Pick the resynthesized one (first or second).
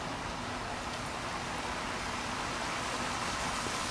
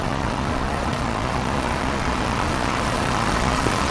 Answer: second